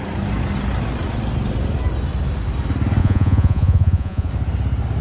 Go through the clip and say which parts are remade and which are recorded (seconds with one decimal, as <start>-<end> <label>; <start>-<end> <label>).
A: 0.0-3.0 recorded; 3.0-4.3 remade; 4.3-5.0 recorded